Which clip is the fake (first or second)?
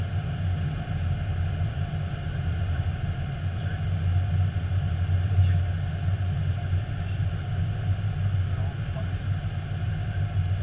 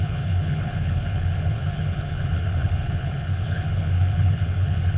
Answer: second